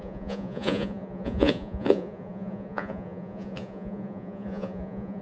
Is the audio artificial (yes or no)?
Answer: yes